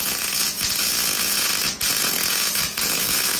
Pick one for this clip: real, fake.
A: fake